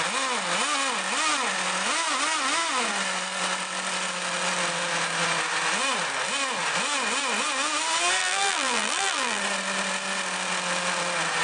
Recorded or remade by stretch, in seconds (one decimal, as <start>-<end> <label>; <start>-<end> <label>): 0.0-8.2 recorded; 8.2-9.4 remade; 9.4-11.4 recorded